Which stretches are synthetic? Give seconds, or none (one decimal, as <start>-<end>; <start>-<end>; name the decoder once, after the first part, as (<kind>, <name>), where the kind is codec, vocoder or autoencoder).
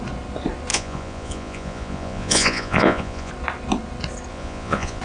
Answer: 0.7-3.3 (vocoder, Vocos); 4.3-5.0